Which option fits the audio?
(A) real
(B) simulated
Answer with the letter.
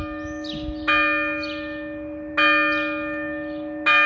A